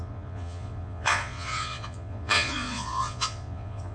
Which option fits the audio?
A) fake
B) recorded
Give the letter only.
A